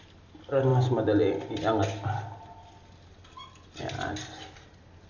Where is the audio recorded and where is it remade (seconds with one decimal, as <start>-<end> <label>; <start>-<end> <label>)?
0.0-5.1 recorded